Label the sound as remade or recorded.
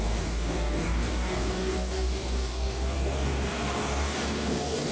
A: remade